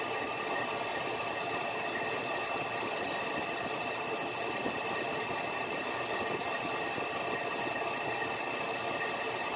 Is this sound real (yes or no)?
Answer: yes